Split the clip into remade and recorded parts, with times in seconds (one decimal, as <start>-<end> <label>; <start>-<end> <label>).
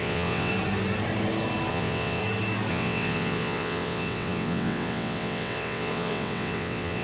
0.0-0.5 remade; 0.5-1.7 recorded; 1.7-2.2 remade; 2.2-2.7 recorded; 2.7-7.0 remade